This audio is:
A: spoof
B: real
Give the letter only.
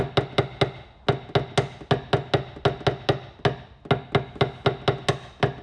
B